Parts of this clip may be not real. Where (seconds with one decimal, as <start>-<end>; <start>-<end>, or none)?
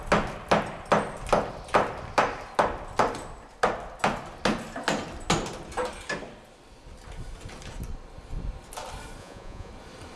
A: 9.2-9.7